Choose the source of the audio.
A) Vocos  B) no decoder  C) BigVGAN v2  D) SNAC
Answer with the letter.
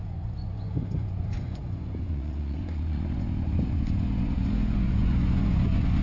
A